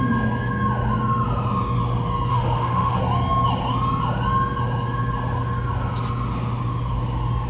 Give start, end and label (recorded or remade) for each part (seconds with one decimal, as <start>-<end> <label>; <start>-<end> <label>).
0.0-2.3 recorded; 2.3-3.0 remade; 3.0-7.5 recorded